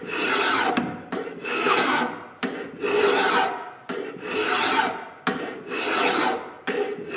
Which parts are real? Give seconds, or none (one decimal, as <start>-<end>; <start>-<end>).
0.0-1.3; 2.1-7.2